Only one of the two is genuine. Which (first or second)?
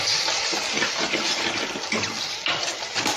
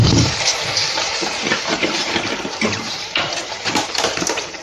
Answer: first